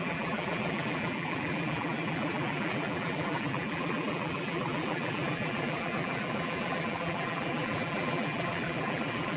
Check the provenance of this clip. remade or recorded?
remade